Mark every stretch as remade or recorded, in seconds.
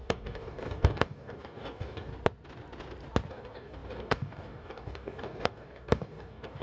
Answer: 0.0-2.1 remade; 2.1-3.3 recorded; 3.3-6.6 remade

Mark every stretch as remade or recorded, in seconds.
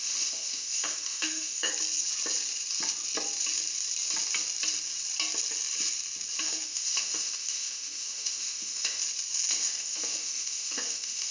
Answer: 0.0-1.7 remade; 1.7-6.4 recorded; 6.4-9.0 remade; 9.0-9.5 recorded; 9.5-11.3 remade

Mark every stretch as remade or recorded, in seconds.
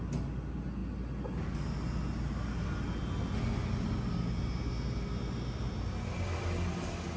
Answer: 0.0-7.2 recorded